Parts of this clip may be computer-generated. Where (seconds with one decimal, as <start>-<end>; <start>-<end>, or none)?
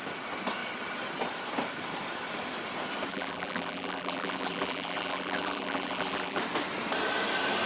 3.1-6.4